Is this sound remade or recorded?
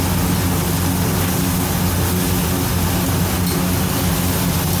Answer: recorded